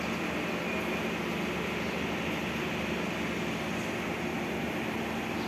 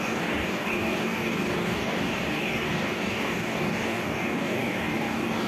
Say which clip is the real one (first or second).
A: first